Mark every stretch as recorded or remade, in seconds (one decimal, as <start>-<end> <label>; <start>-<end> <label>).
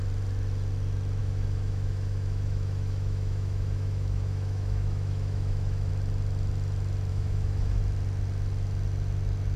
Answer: 0.0-1.2 recorded; 1.2-5.9 remade; 5.9-7.1 recorded; 7.1-7.8 remade; 7.8-9.6 recorded